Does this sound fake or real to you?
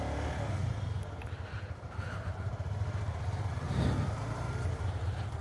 real